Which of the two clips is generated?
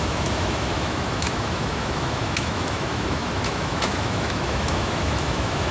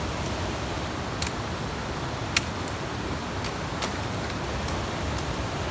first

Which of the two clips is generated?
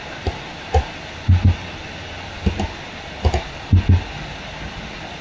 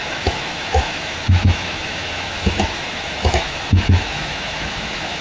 second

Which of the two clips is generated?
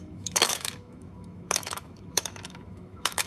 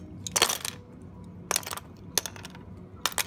first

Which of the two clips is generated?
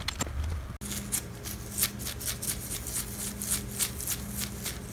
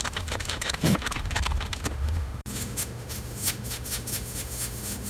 second